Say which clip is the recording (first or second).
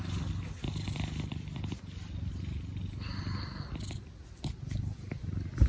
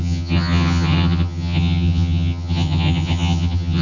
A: first